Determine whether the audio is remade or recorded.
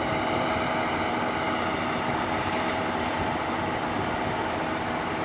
recorded